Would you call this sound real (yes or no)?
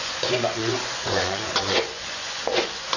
no